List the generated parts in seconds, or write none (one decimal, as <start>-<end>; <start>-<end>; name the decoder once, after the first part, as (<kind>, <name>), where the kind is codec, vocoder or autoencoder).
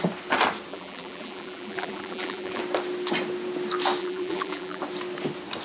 0.7-2.6 (vocoder, BigVGAN v2); 4.0-4.8